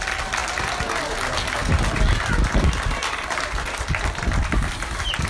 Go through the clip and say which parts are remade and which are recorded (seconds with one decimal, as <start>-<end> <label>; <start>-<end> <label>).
0.0-5.3 recorded